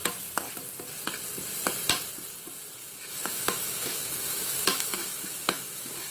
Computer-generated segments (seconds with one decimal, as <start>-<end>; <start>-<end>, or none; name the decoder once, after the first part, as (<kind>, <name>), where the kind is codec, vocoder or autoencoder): 2.8-6.1 (autoencoder, DAC-VAE)